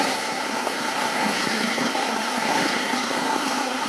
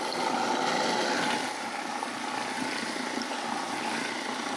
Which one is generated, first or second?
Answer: first